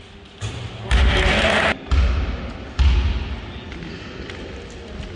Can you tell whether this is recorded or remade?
recorded